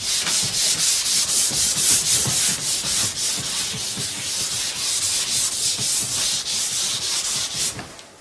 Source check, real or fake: real